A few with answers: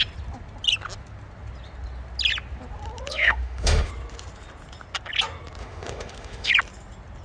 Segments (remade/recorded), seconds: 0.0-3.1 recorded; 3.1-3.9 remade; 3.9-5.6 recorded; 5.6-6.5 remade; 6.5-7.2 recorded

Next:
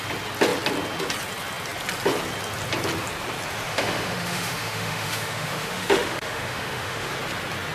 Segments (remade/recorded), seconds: 0.0-3.7 recorded; 3.7-7.1 remade; 7.1-7.7 recorded

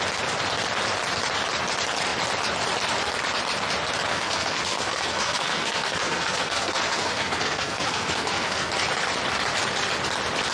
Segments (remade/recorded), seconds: 0.0-4.1 recorded; 4.1-8.7 remade; 8.7-10.5 recorded

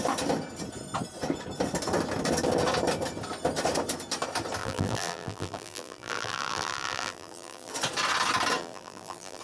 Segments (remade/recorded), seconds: 0.0-4.6 recorded; 4.6-7.7 remade; 7.7-8.6 recorded; 8.6-9.4 remade

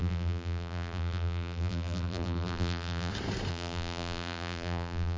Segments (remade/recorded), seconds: 0.0-3.1 remade; 3.1-3.5 recorded; 3.5-5.2 remade